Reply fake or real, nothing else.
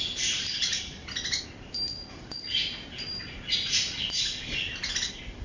real